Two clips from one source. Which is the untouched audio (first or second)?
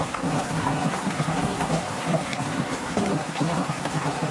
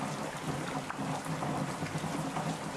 second